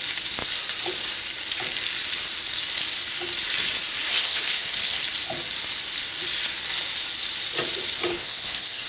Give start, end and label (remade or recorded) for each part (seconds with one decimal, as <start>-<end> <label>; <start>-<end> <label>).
0.0-4.1 recorded; 4.1-5.0 remade; 5.0-8.1 recorded; 8.1-8.9 remade

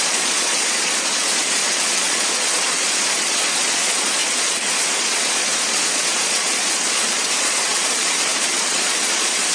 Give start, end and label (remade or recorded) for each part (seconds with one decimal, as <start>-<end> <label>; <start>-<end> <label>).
0.0-9.5 remade

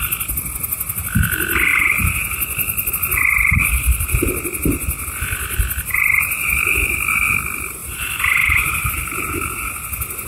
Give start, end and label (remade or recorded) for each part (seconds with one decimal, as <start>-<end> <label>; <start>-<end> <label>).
0.0-7.8 recorded; 7.8-8.9 remade; 8.9-10.3 recorded

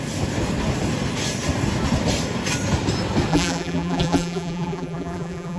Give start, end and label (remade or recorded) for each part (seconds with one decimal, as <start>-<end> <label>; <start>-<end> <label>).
0.0-3.3 recorded; 3.3-5.6 remade

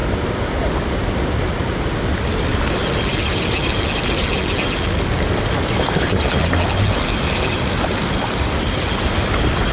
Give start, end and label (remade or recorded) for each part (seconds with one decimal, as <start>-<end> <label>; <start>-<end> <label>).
0.0-9.7 recorded

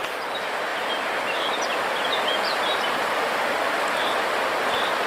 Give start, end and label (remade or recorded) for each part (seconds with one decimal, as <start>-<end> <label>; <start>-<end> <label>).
0.0-5.1 recorded